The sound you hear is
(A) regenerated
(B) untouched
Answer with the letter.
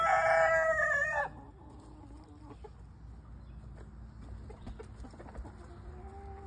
B